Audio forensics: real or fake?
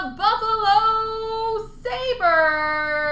real